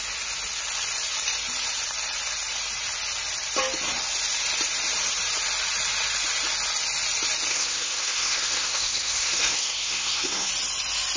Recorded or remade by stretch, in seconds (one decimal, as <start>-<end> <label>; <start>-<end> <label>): 0.0-7.5 recorded; 7.5-10.5 remade; 10.5-11.2 recorded